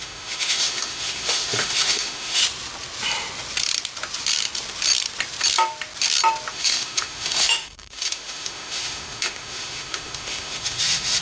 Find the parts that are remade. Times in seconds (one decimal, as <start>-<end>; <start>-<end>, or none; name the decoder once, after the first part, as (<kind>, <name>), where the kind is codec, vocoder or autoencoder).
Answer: 0.0-2.4 (autoencoder, DAC-VAE); 6.5-11.2